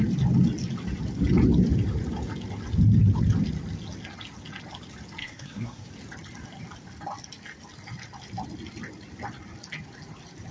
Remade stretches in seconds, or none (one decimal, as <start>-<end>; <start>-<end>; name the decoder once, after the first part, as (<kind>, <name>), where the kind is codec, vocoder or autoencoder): 5.2-5.9 (codec, SNAC)